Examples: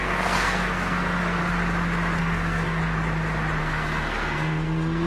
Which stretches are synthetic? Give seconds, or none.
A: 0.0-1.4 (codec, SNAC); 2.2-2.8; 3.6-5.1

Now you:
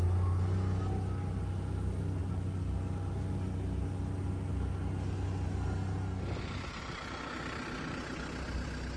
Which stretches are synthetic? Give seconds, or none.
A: none

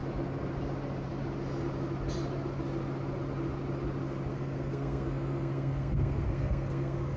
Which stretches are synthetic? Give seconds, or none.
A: 4.3-7.2 (codec, SNAC)

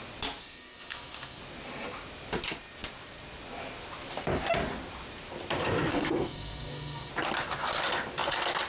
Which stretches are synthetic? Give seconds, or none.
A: 0.4-1.4 (codec, SNAC); 5.9-7.1

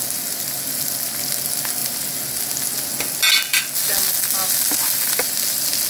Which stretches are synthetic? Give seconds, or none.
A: none

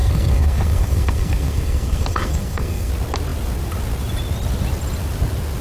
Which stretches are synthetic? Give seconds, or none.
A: 0.0-2.9 (codec, SNAC)

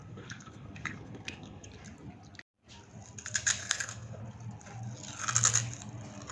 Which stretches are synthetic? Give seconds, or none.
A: 0.0-1.7 (codec, SNAC); 3.6-4.2